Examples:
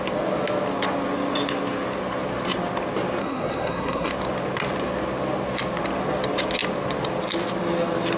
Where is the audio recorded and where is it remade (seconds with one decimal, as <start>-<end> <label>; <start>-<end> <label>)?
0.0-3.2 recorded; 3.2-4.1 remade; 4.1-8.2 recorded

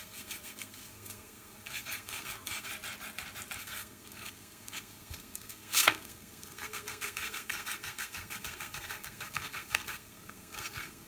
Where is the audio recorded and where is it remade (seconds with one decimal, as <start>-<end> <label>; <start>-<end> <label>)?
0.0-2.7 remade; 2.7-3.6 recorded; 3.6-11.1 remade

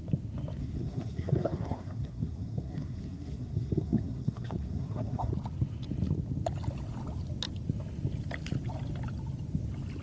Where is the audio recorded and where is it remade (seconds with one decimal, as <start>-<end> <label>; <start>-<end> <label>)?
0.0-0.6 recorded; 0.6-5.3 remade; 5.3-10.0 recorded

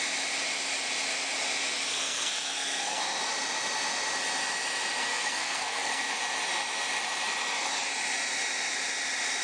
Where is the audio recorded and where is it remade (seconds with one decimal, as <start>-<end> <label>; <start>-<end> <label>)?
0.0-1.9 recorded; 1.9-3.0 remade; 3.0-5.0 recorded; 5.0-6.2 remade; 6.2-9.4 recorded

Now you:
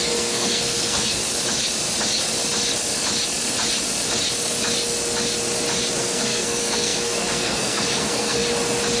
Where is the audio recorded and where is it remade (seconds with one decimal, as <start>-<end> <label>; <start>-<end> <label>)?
0.0-1.2 remade; 1.2-6.0 recorded; 6.0-8.4 remade; 8.4-9.0 recorded